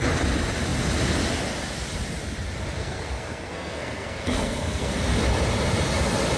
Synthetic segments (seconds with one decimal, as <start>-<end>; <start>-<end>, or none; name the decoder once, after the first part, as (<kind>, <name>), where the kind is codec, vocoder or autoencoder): 2.8-4.9 (codec, SNAC)